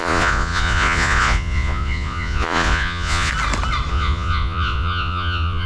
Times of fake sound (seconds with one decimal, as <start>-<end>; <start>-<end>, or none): 0.0-3.3; 3.9-5.7